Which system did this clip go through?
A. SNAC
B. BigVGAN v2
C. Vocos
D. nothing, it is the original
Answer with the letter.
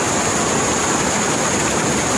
D